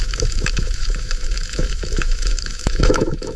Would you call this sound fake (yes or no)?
yes